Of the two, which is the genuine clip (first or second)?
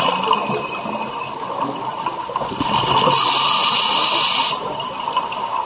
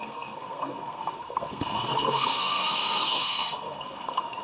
first